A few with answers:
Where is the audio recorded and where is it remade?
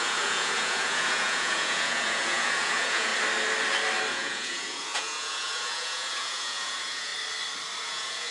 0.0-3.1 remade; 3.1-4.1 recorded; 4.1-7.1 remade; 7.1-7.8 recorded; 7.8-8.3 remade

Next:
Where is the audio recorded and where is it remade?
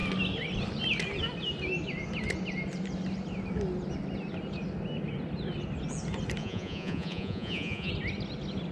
0.0-6.4 recorded; 6.4-7.9 remade; 7.9-8.7 recorded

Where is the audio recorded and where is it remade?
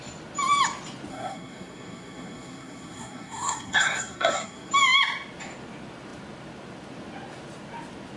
0.0-1.1 recorded; 1.1-4.7 remade; 4.7-8.2 recorded